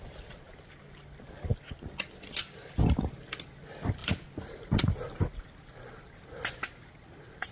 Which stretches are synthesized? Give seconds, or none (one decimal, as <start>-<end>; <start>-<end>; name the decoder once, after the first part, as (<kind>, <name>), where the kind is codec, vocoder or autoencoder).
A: none